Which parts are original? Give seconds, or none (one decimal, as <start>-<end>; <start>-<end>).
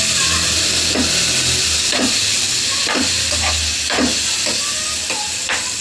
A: 0.0-5.8